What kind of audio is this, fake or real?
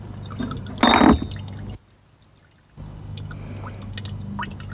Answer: real